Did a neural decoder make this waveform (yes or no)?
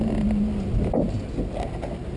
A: no